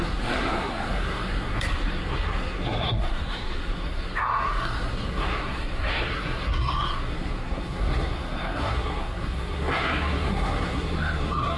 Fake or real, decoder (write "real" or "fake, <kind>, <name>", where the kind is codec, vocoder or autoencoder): fake, codec, SNAC